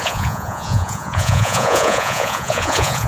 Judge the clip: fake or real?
fake